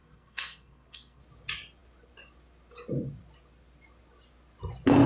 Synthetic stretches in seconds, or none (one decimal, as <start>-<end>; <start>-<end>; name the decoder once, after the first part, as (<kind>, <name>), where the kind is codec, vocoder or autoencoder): 0.0-1.2 (codec, SNAC)